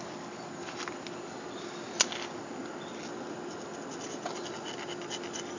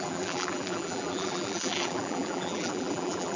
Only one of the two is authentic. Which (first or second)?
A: first